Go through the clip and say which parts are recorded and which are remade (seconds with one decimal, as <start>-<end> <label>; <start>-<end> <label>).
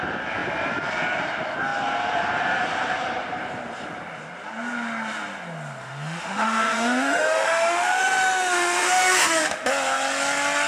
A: 0.0-5.8 recorded; 5.8-9.7 remade; 9.7-10.7 recorded